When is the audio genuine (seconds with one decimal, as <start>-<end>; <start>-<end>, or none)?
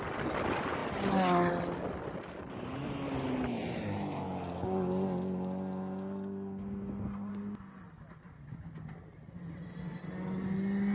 0.0-10.9